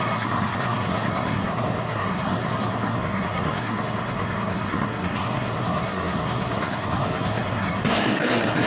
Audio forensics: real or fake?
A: fake